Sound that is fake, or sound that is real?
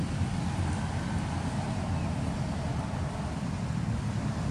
real